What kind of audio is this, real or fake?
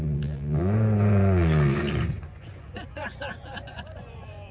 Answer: fake